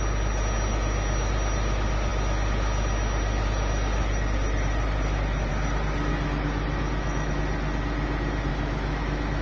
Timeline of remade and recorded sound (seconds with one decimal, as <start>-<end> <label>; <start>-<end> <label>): 0.0-6.1 recorded; 6.1-7.4 remade; 7.4-8.5 recorded; 8.5-9.4 remade

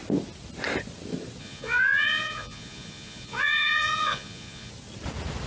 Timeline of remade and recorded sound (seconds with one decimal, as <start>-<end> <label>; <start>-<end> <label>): 0.0-1.4 recorded; 1.4-4.7 remade; 4.7-5.5 recorded

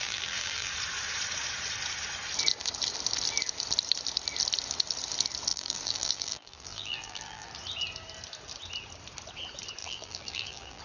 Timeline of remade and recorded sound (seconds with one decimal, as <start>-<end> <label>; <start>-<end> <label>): 0.0-0.7 remade; 0.7-5.5 recorded; 5.5-7.5 remade; 7.5-9.8 recorded; 9.8-10.8 remade

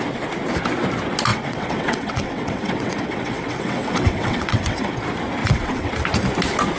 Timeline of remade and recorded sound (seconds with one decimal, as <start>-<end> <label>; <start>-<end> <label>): 0.0-1.3 recorded; 1.3-5.0 remade; 5.0-5.4 recorded; 5.4-5.9 remade; 5.9-6.8 recorded

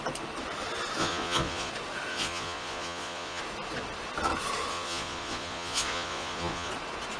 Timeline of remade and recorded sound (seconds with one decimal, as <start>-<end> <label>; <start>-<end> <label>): 0.0-1.0 recorded; 1.0-1.7 remade; 1.7-2.1 recorded; 2.1-3.4 remade; 3.4-4.7 recorded; 4.7-6.7 remade; 6.7-7.2 recorded

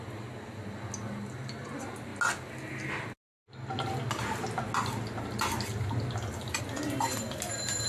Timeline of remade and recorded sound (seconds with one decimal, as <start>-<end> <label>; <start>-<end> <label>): 0.0-7.9 recorded

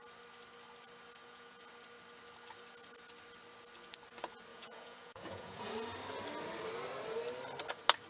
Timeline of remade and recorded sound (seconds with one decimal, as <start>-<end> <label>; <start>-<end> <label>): 0.0-1.2 recorded; 1.2-1.7 remade; 1.7-4.5 recorded; 4.5-5.7 remade; 5.7-8.1 recorded